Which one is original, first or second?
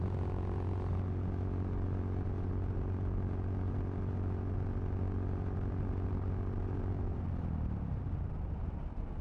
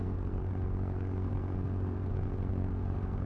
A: first